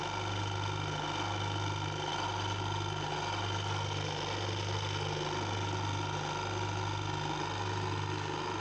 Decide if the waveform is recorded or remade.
recorded